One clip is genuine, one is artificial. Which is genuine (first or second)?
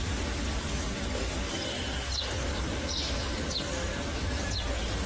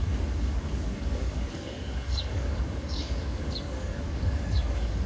first